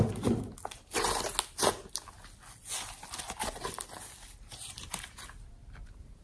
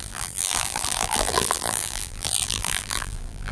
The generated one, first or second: second